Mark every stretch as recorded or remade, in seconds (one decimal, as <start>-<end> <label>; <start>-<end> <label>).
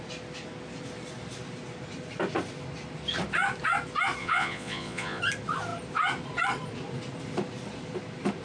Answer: 0.0-4.2 recorded; 4.2-5.2 remade; 5.2-8.4 recorded